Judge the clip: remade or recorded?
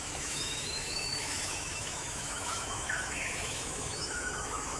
remade